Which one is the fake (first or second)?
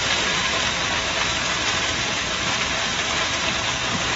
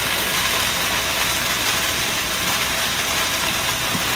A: first